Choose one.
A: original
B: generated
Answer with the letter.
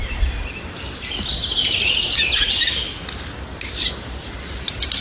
B